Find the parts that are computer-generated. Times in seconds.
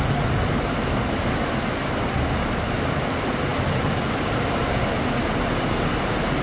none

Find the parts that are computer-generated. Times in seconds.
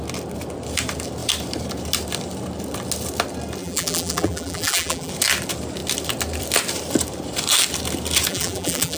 3.6-5.1 (vocoder, BigVGAN v2); 8.3-9.0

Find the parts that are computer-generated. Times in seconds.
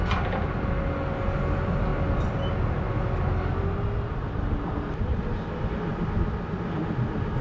5.9-6.8 (vocoder, BigVGAN v2)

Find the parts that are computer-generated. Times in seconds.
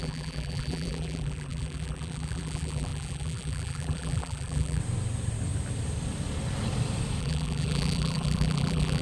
0.0-4.8 (vocoder, BigVGAN v2); 7.2-9.0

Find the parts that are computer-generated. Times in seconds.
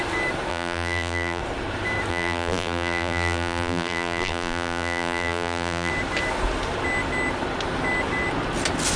0.5-1.4 (vocoder, BigVGAN v2); 2.1-5.9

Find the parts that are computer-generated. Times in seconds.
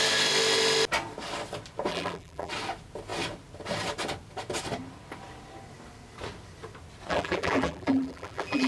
1.9-2.5 (vocoder, BigVGAN v2); 7.1-8.7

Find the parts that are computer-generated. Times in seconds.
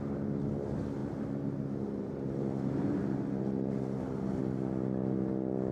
1.0-4.4 (vocoder, BigVGAN v2)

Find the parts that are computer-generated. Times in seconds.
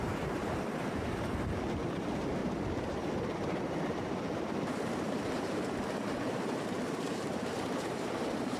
0.0-2.4 (vocoder, BigVGAN v2); 3.6-8.6